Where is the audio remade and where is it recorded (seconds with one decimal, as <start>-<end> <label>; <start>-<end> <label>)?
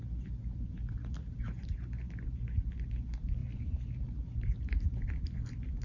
0.0-0.7 recorded; 0.7-1.6 remade; 1.6-3.4 recorded; 3.4-5.8 remade